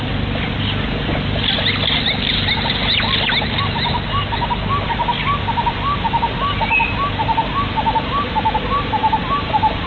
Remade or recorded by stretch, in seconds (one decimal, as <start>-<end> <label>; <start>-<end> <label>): 0.0-9.9 recorded